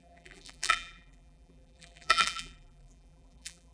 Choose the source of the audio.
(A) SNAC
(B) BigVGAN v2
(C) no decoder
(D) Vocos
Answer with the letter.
B